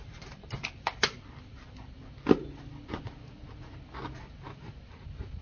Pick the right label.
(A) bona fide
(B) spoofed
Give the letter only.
A